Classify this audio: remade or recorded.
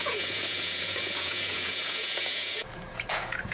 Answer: remade